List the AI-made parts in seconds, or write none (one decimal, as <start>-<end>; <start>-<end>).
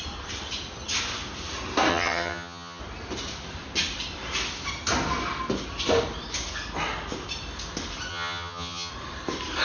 1.9-2.8; 8.1-8.9